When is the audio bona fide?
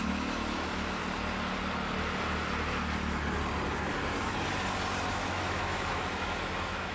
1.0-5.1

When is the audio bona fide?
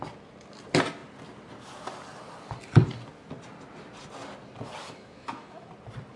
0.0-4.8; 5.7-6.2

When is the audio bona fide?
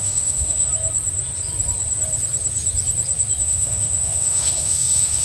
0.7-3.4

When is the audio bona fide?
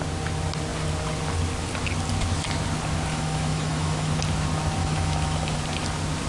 0.0-3.1; 4.1-4.8; 5.6-6.3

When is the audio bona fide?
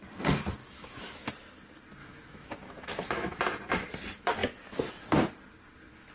0.0-0.6; 1.3-2.0; 3.4-6.1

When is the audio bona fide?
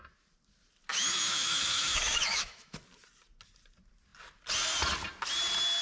0.0-0.9; 2.8-5.8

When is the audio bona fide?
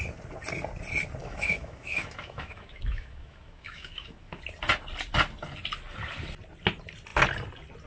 0.0-1.2; 4.4-7.9